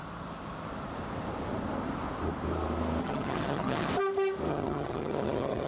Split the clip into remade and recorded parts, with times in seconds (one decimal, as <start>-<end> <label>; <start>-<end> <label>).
0.0-3.0 recorded; 3.0-3.9 remade; 3.9-4.5 recorded; 4.5-5.7 remade